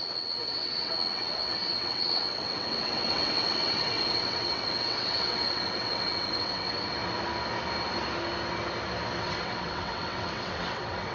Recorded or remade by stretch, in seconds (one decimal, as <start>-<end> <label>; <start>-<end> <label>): 0.0-7.0 remade; 7.0-9.2 recorded; 9.2-11.1 remade